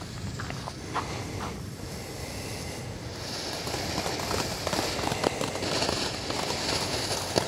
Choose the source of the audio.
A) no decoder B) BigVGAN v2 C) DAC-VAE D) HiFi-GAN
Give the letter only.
A